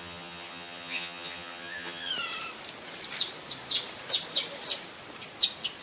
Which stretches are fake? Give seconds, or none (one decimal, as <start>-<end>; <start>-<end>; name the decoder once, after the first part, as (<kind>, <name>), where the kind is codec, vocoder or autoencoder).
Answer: 0.0-2.1 (vocoder, HiFi-GAN)